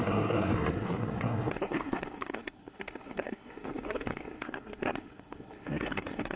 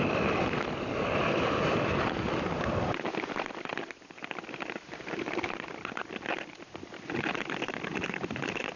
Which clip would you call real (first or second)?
second